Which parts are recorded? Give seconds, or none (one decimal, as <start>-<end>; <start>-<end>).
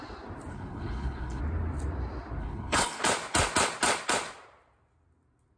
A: 0.0-0.5; 1.4-2.4; 3.0-5.6